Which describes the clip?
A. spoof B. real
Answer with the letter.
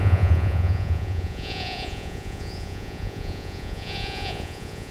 A